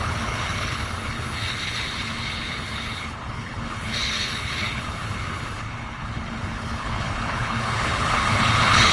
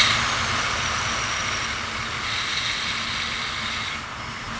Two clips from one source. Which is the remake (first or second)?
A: first